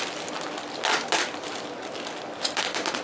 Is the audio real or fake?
real